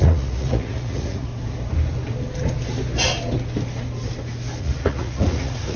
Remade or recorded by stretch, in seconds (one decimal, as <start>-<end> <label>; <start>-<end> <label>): 0.0-1.3 remade; 1.3-4.6 recorded; 4.6-5.8 remade